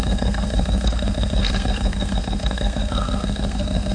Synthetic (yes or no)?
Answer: yes